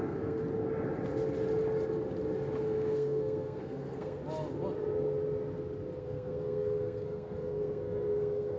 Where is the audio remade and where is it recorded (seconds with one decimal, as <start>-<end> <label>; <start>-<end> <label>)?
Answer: 0.0-0.4 remade; 0.4-2.6 recorded; 2.6-4.2 remade; 4.2-6.0 recorded; 6.0-8.6 remade